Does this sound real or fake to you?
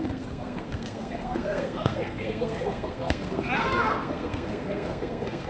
fake